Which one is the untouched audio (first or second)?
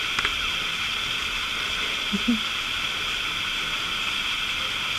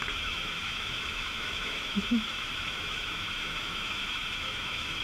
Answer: first